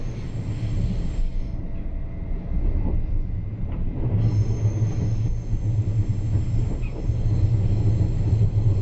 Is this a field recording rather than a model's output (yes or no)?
yes